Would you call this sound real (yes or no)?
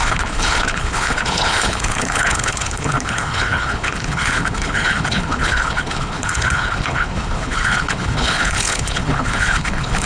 no